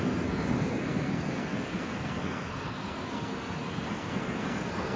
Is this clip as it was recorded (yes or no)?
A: no